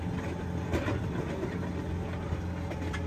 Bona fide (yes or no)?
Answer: yes